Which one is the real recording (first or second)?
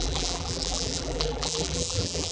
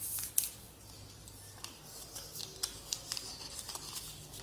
second